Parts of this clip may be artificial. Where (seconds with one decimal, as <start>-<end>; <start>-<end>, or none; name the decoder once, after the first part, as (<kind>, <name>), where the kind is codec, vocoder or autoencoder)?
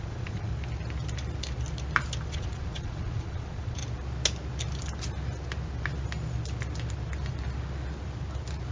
0.0-0.5 (vocoder, Vocos); 2.3-3.8